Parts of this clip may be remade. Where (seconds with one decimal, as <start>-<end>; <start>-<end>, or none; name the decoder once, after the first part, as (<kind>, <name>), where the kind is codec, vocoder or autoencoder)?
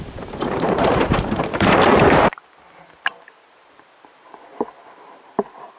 0.0-1.9 (vocoder, BigVGAN v2); 3.5-5.8